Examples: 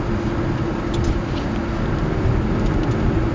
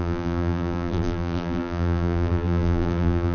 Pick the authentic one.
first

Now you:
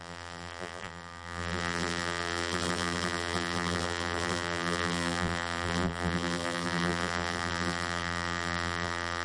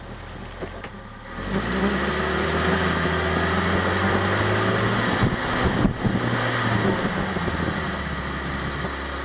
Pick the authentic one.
second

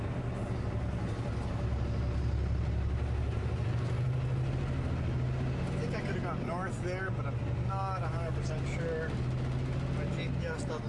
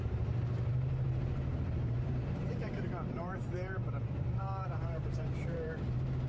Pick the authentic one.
first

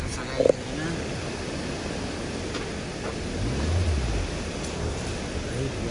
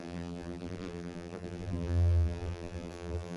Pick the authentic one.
first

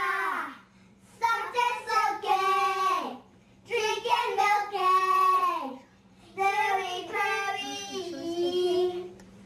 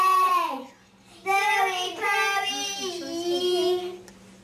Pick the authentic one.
second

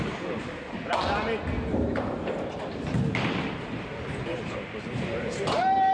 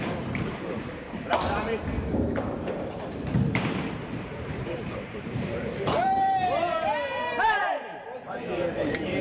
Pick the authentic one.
first